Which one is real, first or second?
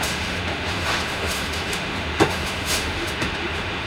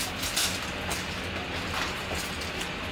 second